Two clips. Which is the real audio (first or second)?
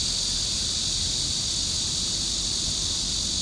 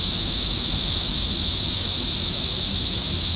first